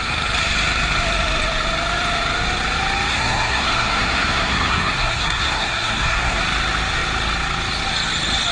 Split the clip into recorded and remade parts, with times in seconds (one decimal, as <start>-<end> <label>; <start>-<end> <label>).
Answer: 0.0-3.1 recorded; 3.1-6.4 remade; 6.4-8.5 recorded